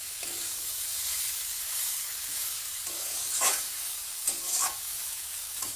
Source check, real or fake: fake